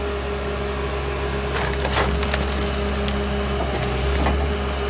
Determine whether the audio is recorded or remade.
recorded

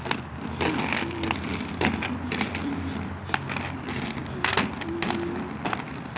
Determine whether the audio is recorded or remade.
recorded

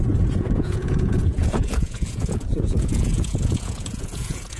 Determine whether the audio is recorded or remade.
remade